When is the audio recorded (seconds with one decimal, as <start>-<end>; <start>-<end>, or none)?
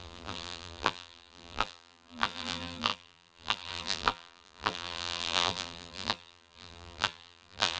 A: none